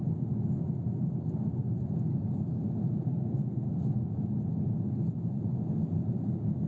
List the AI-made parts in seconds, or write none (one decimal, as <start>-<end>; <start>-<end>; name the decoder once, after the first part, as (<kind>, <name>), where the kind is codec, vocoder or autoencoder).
3.1-3.7 (codec, SNAC)